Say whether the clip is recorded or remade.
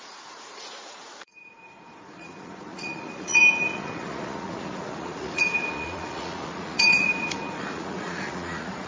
remade